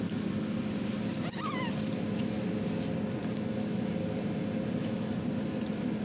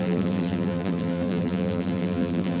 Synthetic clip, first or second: second